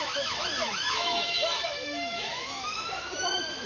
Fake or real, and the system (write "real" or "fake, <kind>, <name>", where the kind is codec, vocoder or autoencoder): fake, autoencoder, DAC-VAE